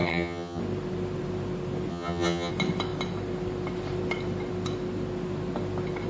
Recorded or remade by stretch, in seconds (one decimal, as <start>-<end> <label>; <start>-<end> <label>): 0.0-0.6 remade; 0.6-1.9 recorded; 1.9-2.5 remade; 2.5-6.1 recorded